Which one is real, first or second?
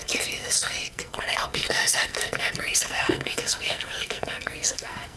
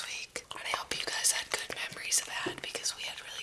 second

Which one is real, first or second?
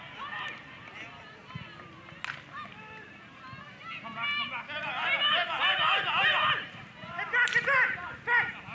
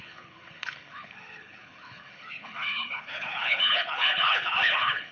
first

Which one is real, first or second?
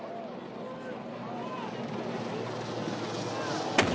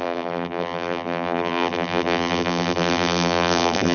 first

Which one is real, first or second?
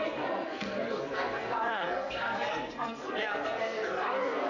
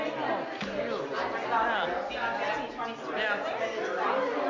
second